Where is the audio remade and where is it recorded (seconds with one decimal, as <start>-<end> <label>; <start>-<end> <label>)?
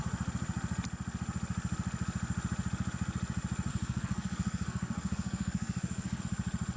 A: 0.0-3.7 recorded; 3.7-6.2 remade; 6.2-6.8 recorded